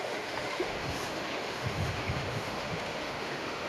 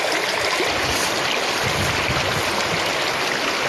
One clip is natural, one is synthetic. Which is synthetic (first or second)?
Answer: first